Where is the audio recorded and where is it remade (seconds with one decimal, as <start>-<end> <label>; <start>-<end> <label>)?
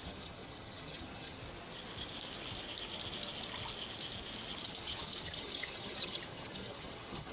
0.0-1.4 remade; 1.4-4.6 recorded; 4.6-7.3 remade